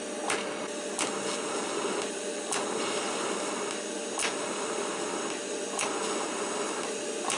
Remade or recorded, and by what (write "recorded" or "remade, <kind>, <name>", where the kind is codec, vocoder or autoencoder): recorded